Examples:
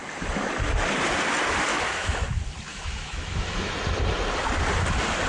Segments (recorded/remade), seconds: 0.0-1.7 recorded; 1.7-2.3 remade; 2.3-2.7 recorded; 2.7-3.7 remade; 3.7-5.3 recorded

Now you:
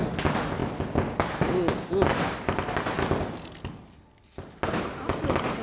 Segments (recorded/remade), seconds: 0.0-5.6 recorded

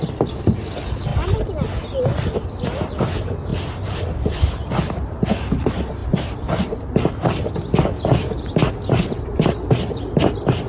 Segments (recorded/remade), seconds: 0.0-3.5 recorded; 3.5-4.0 remade; 4.0-10.7 recorded

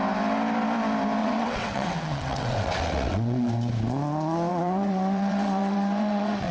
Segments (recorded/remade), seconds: 0.0-1.2 recorded; 1.2-3.5 remade; 3.5-4.5 recorded; 4.5-6.5 remade

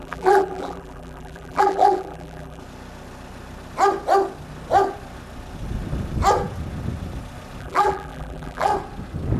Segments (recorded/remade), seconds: 0.0-2.6 remade; 2.6-7.6 recorded; 7.6-8.7 remade; 8.7-9.4 recorded

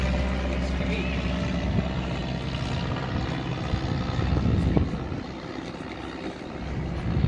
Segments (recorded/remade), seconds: 0.0-7.3 recorded

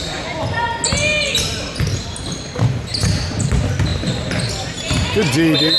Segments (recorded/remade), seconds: 0.0-3.9 recorded; 3.9-4.5 remade; 4.5-5.8 recorded